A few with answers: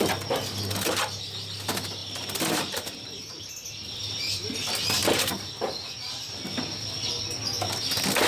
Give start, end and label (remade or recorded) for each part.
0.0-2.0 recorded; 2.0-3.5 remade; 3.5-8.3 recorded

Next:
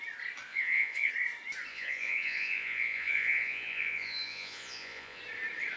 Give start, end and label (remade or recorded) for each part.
0.0-0.5 recorded; 0.5-1.1 remade; 1.1-1.7 recorded; 1.7-5.2 remade; 5.2-5.8 recorded

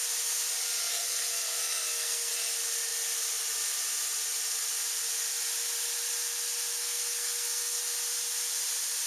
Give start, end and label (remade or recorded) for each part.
0.0-0.9 recorded; 0.9-2.3 remade; 2.3-6.8 recorded; 6.8-7.8 remade; 7.8-9.1 recorded

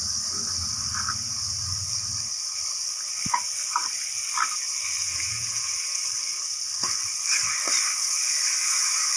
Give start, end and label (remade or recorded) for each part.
0.0-5.0 recorded; 5.0-6.0 remade; 6.0-9.2 recorded

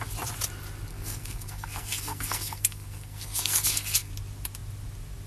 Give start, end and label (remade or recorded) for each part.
0.0-0.9 recorded; 0.9-4.1 remade; 4.1-5.3 recorded

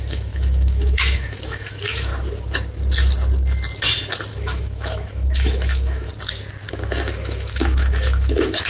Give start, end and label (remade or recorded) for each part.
0.0-2.1 remade; 2.1-4.3 recorded; 4.3-6.1 remade; 6.1-6.7 recorded; 6.7-8.7 remade

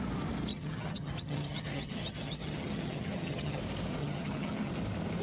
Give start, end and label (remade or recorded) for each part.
0.0-0.5 recorded; 0.5-3.6 remade; 3.6-4.0 recorded; 4.0-4.7 remade; 4.7-5.2 recorded